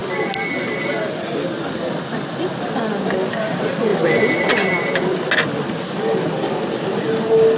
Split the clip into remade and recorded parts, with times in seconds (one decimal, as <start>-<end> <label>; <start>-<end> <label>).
0.0-7.6 recorded